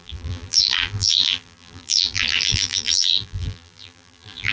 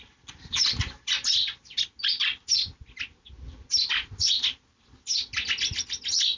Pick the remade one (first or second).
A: first